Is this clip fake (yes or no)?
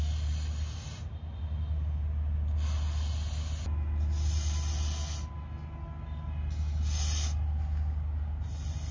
no